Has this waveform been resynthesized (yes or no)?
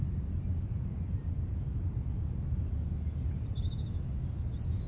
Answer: no